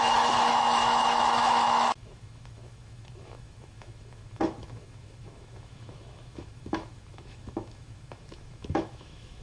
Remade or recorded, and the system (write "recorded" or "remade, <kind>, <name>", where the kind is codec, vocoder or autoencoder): remade, autoencoder, DAC-VAE